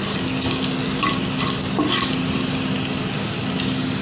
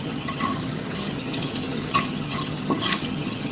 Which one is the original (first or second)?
first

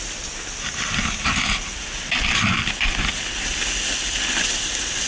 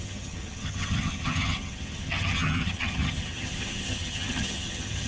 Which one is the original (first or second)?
first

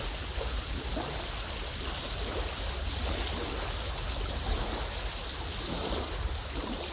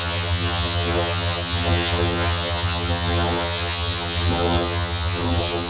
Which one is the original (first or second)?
first